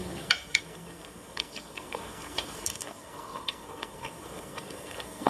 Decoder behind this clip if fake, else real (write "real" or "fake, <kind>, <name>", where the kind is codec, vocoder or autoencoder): fake, codec, SNAC